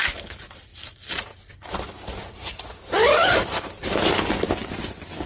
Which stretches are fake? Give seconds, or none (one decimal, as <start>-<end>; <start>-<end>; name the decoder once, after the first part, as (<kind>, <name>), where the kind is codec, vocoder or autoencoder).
0.7-3.9 (vocoder, BigVGAN v2); 4.6-5.3